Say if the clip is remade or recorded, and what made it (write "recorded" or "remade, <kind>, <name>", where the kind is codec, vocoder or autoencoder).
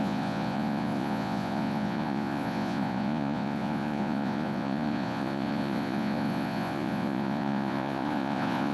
remade, vocoder, Vocos